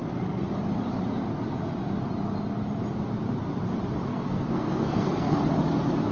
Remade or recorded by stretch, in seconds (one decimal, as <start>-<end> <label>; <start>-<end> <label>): 0.0-4.1 recorded; 4.1-5.4 remade; 5.4-6.1 recorded